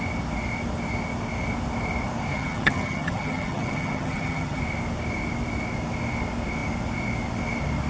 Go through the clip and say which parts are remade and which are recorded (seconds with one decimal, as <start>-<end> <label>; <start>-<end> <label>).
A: 0.0-2.3 recorded; 2.3-4.6 remade; 4.6-7.9 recorded